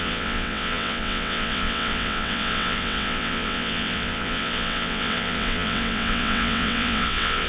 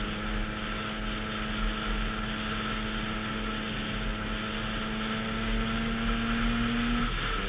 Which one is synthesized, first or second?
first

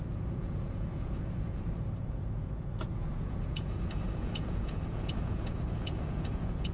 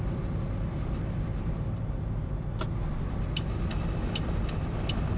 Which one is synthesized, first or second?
first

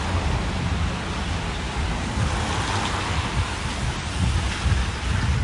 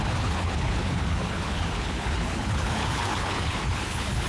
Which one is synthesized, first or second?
second